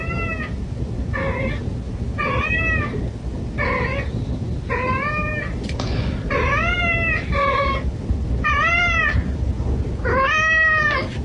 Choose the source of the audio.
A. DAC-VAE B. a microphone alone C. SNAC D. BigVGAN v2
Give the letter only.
B